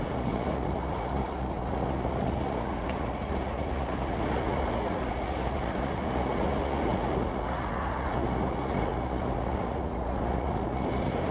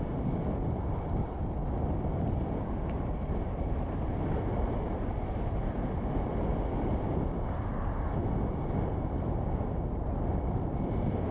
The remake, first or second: first